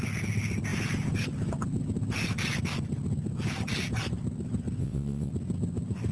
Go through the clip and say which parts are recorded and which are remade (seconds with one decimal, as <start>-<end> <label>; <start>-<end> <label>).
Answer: 0.0-4.8 recorded; 4.8-5.3 remade; 5.3-6.1 recorded